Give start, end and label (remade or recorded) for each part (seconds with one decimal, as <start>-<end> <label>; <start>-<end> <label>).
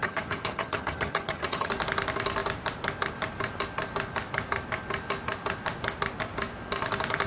0.0-1.7 remade; 1.7-7.3 recorded